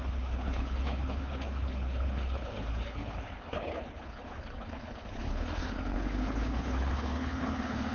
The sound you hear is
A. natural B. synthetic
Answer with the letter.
B